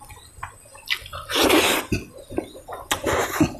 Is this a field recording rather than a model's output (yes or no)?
yes